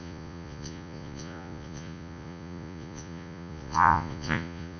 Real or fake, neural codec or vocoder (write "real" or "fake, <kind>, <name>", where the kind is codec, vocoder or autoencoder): fake, vocoder, Vocos